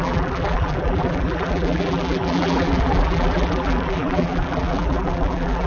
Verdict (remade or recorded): remade